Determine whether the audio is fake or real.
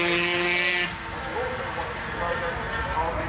real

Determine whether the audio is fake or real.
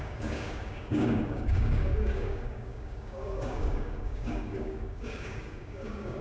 fake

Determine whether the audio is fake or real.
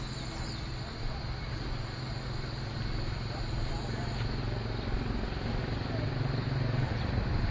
real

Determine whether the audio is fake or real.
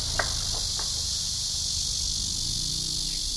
real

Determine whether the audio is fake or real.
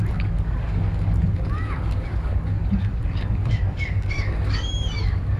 fake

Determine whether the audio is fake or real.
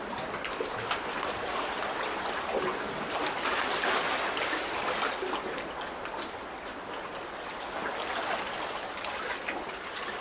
real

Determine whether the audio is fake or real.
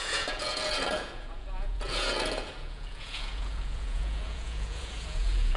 fake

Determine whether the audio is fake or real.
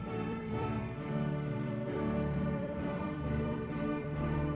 fake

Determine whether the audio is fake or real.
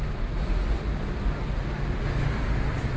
real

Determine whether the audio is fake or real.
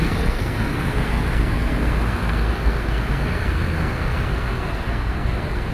fake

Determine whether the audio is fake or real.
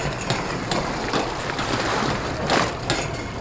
real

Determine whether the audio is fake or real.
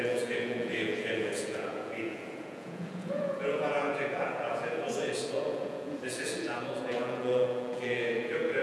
fake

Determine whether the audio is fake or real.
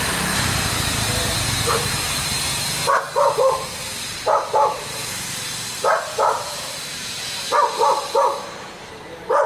fake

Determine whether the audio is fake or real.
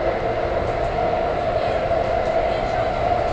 real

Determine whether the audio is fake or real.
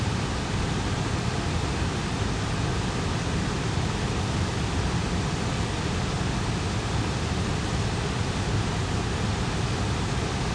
real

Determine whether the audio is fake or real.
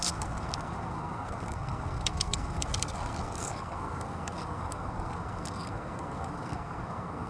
fake